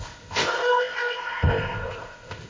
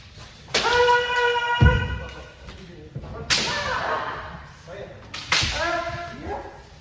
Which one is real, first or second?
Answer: second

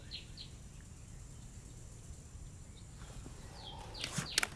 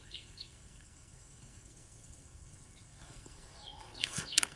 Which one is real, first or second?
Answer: first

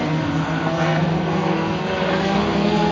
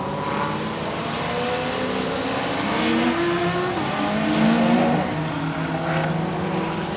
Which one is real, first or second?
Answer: second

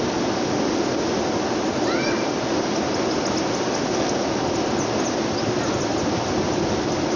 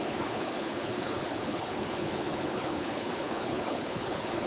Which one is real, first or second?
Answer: first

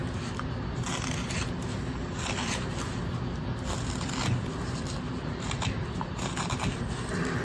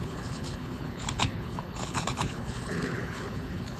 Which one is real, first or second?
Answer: first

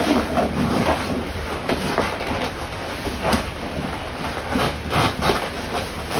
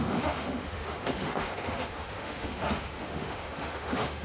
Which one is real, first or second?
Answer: first